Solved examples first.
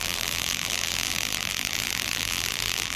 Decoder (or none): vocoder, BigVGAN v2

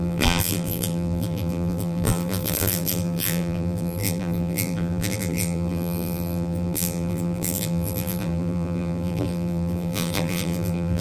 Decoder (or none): vocoder, BigVGAN v2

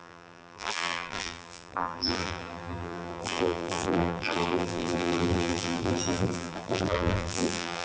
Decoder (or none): vocoder, BigVGAN v2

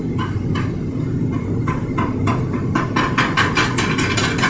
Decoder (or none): none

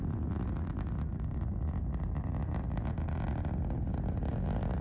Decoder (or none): none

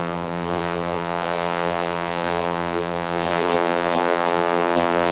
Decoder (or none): vocoder, BigVGAN v2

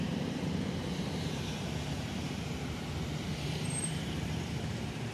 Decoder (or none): vocoder, BigVGAN v2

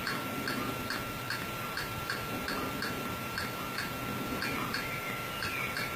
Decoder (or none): none